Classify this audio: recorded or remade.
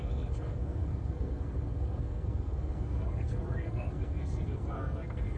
remade